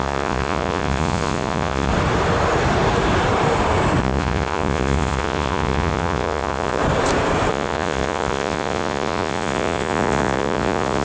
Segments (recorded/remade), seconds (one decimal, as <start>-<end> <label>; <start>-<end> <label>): 0.0-1.9 remade; 1.9-4.0 recorded; 4.0-6.8 remade; 6.8-7.5 recorded; 7.5-11.0 remade